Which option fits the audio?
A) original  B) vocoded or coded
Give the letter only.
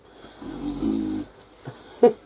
A